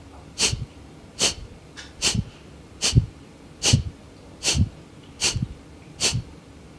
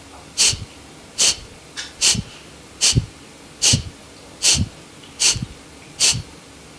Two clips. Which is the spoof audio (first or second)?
first